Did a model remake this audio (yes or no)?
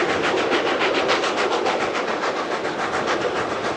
yes